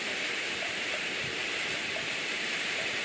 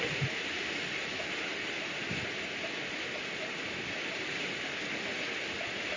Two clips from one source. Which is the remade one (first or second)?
first